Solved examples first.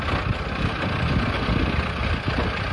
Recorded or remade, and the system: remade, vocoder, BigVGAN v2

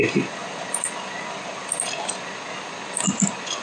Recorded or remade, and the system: recorded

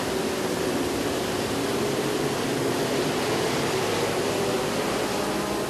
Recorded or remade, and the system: recorded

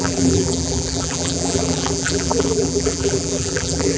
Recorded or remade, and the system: remade, vocoder, BigVGAN v2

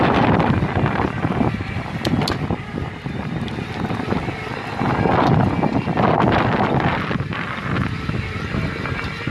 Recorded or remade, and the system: recorded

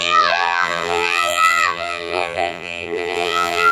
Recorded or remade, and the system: remade, vocoder, BigVGAN v2